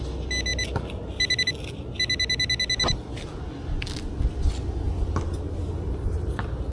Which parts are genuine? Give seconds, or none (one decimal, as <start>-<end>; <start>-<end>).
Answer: 0.0-6.7